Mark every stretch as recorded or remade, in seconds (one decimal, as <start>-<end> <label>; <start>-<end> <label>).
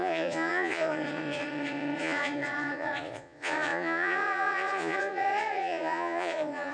0.0-6.7 remade